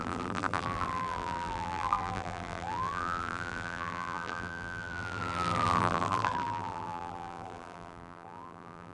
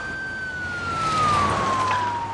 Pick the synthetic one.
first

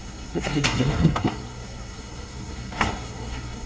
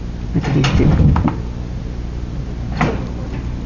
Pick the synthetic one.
first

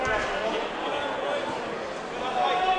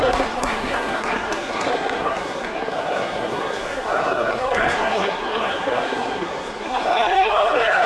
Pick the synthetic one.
second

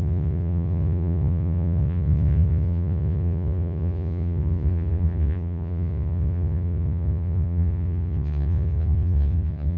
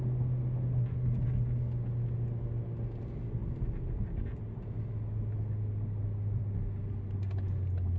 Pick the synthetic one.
first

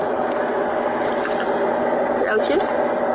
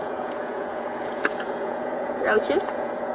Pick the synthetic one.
second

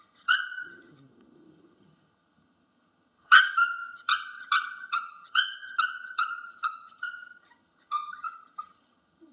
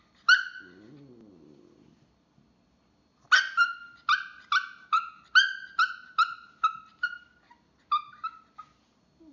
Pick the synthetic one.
first